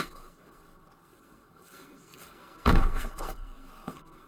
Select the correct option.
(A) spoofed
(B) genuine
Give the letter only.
A